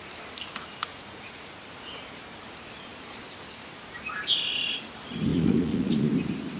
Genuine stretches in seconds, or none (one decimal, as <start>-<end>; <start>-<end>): 0.0-0.9; 1.5-5.3; 6.1-6.6